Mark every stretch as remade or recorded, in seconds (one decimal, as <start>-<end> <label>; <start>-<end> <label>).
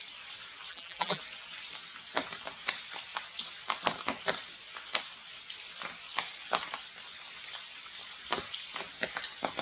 0.0-0.7 recorded; 0.7-1.2 remade; 1.2-9.6 recorded